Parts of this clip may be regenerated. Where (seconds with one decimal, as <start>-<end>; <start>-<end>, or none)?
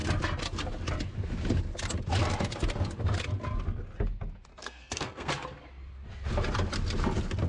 4.5-5.3